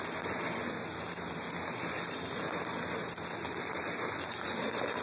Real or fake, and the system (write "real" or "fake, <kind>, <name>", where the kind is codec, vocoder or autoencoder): real